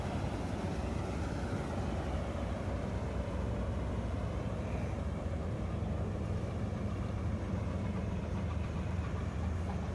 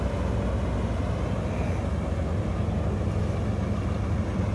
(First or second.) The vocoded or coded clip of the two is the first